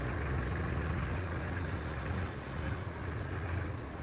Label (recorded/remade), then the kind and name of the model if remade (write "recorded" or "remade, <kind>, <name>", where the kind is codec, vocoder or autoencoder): remade, vocoder, Vocos